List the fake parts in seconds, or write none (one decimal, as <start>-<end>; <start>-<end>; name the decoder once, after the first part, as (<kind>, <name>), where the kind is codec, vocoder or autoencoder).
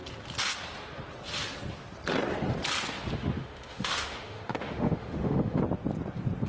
3.2-5.6 (autoencoder, DAC-VAE)